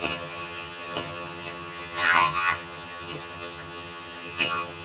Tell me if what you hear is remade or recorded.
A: remade